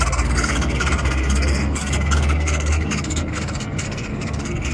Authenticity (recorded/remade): remade